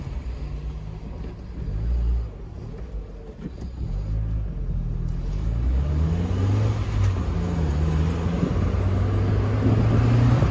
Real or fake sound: real